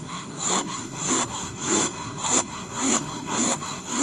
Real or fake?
fake